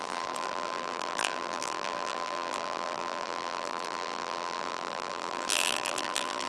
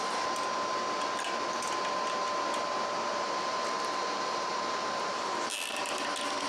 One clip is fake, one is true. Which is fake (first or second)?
first